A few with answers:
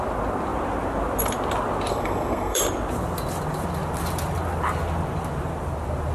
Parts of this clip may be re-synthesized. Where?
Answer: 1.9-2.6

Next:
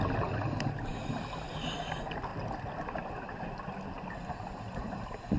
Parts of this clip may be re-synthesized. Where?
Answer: none

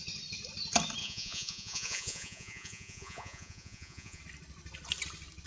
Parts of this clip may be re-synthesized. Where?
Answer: 1.0-4.2

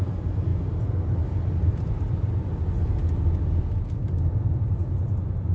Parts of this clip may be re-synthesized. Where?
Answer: none

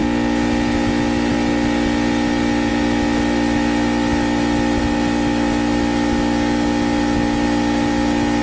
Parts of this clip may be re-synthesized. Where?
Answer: none

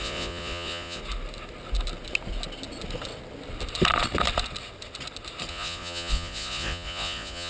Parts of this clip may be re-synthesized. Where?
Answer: 0.0-1.0; 5.5-7.5

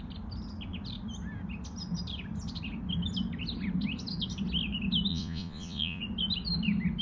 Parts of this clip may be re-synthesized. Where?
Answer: 5.1-6.0

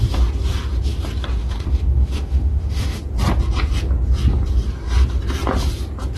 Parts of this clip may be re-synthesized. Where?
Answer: 1.4-3.0